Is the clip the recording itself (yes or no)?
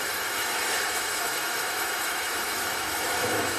no